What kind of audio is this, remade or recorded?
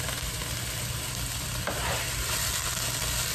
recorded